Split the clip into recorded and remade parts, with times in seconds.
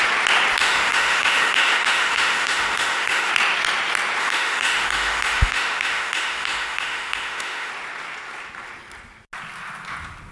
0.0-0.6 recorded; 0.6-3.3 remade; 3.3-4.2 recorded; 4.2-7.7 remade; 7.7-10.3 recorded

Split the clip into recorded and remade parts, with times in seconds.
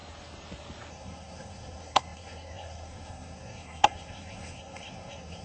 0.0-0.9 recorded; 0.9-5.4 remade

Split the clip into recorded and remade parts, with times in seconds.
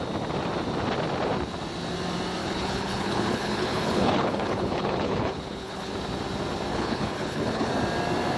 0.0-2.4 recorded; 2.4-5.9 remade; 5.9-6.7 recorded; 6.7-7.7 remade; 7.7-8.4 recorded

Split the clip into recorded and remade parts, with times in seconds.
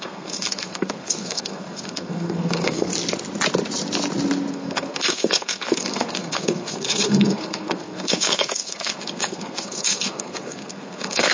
0.0-2.9 remade; 2.9-4.5 recorded; 4.5-11.3 remade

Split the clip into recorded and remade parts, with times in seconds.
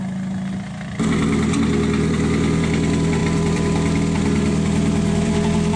0.0-5.8 recorded